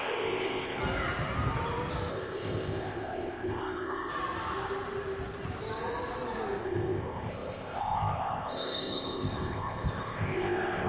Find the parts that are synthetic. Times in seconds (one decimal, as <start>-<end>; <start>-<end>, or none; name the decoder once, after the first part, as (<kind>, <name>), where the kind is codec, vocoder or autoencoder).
0.0-0.8 (codec, ZipCodec); 2.1-4.1; 6.6-10.9